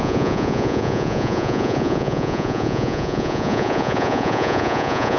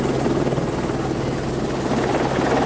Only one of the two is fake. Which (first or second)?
first